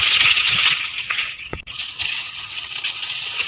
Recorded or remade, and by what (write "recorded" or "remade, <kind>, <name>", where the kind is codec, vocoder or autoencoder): remade, vocoder, WaveNeXt